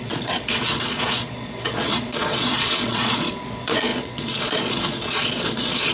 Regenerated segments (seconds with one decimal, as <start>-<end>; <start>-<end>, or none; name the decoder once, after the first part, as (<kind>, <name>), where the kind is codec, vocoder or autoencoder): 0.0-5.9 (vocoder, Vocos)